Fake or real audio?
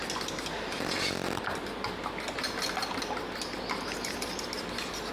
real